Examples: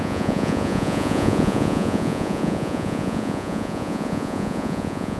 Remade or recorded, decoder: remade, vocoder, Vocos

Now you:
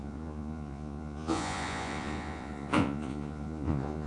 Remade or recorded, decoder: remade, vocoder, Vocos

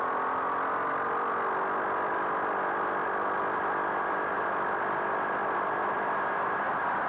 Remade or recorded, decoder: recorded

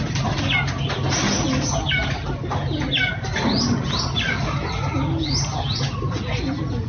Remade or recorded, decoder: recorded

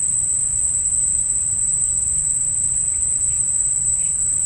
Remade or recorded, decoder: recorded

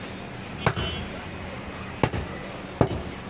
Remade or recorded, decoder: recorded